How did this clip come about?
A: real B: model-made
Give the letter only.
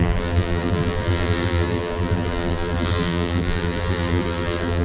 B